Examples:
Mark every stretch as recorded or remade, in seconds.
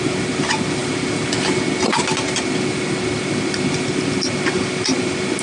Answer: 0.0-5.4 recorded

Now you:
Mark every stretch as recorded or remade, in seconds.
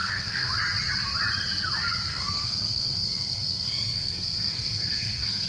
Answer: 0.0-0.5 remade; 0.5-2.1 recorded; 2.1-5.5 remade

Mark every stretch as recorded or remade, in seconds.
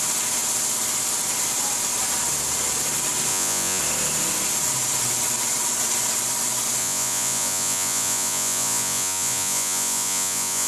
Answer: 0.0-3.3 recorded; 3.3-3.8 remade; 3.8-6.8 recorded; 6.8-10.7 remade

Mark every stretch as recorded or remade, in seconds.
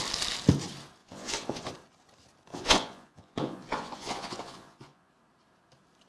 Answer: 0.0-1.0 recorded; 1.0-1.7 remade; 1.7-2.5 recorded; 2.5-5.1 remade; 5.1-6.1 recorded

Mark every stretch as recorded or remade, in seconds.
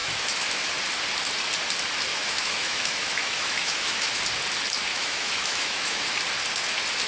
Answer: 0.0-0.7 remade; 0.7-2.1 recorded; 2.1-4.2 remade; 4.2-4.9 recorded; 4.9-6.2 remade; 6.2-7.1 recorded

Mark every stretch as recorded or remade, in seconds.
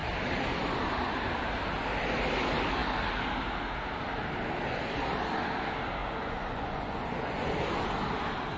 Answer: 0.0-6.0 recorded; 6.0-7.5 remade; 7.5-8.6 recorded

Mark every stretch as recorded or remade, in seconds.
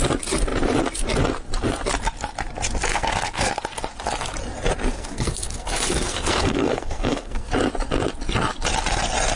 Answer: 0.0-2.9 recorded; 2.9-3.5 remade; 3.5-4.9 recorded; 4.9-7.5 remade; 7.5-9.4 recorded